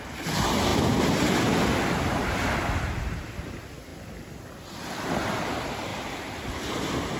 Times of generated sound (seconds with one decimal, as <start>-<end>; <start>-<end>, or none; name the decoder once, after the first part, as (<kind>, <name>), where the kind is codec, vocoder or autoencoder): none